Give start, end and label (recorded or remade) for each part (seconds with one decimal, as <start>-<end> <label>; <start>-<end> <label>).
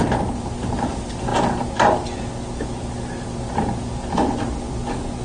0.0-5.2 recorded